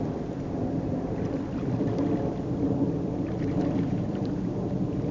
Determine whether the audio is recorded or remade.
remade